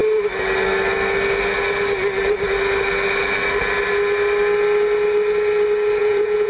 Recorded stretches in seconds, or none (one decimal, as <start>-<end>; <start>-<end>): 0.0-6.0